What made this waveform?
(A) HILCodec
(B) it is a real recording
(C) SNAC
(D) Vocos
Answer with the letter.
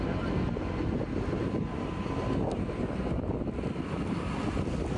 B